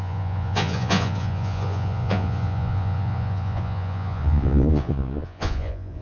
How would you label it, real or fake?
fake